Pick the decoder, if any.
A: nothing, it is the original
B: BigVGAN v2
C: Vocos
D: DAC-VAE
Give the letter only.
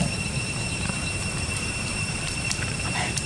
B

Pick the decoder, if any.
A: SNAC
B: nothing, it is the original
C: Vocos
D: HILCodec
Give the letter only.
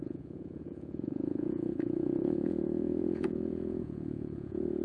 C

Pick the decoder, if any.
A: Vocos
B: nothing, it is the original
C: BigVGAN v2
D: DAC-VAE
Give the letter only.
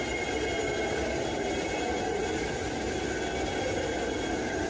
B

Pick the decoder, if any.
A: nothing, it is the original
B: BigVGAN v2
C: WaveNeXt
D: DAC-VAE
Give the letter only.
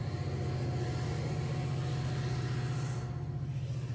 A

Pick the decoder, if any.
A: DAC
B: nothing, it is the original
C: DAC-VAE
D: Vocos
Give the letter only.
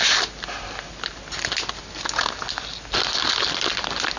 B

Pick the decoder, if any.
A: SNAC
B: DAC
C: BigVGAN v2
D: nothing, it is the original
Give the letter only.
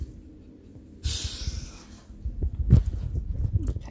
D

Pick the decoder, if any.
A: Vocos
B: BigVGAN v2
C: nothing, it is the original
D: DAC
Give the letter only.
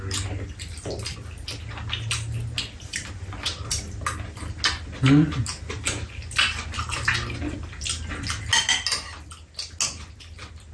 C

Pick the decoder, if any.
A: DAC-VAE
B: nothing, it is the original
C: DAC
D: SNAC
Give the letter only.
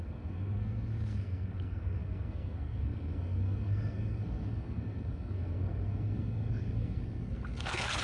D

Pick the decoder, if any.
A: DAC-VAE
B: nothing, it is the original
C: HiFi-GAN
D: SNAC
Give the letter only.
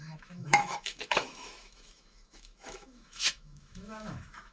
A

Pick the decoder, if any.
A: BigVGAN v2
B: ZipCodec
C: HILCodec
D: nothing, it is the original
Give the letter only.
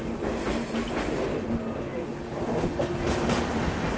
D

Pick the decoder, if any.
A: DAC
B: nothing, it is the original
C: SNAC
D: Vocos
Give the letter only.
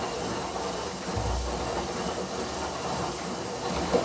B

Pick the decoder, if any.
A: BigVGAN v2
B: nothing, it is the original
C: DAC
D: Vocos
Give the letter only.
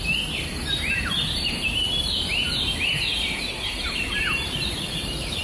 A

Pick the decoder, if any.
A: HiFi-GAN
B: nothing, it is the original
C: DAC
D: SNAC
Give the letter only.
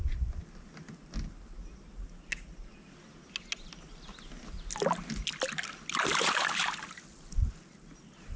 B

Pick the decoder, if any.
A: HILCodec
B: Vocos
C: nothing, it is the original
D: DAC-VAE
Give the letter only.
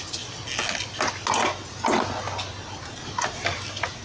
C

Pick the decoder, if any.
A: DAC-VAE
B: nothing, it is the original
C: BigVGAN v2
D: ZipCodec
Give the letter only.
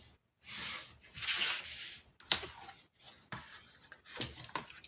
B